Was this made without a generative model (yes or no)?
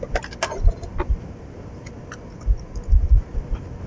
yes